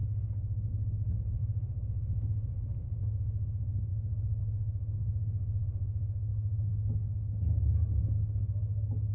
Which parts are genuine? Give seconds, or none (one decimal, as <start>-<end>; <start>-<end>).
0.0-3.9; 4.4-6.3; 6.9-9.1